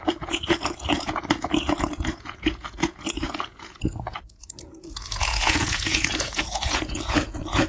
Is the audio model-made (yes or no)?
yes